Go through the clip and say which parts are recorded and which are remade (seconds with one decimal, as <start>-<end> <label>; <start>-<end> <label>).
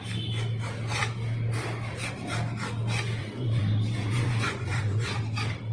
0.0-3.2 recorded; 3.2-5.2 remade; 5.2-5.7 recorded